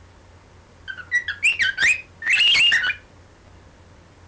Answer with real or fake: real